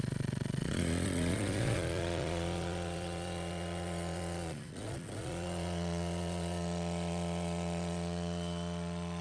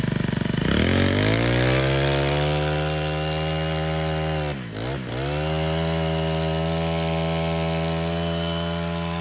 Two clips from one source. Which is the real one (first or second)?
second